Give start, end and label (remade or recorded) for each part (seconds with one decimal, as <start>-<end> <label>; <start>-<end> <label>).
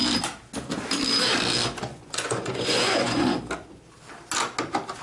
0.0-1.9 recorded; 1.9-3.4 remade; 3.4-5.0 recorded